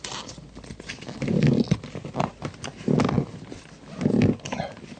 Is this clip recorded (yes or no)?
yes